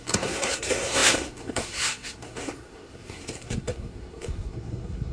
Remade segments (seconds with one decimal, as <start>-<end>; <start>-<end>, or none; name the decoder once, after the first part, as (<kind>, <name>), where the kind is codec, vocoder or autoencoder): 0.0-5.1 (codec, SNAC)